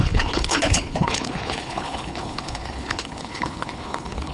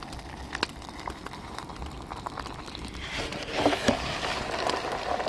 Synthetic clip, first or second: first